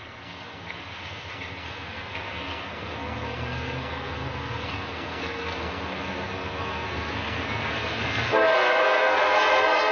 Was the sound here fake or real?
fake